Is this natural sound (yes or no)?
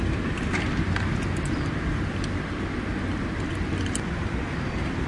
yes